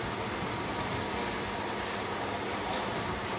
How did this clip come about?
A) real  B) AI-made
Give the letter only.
A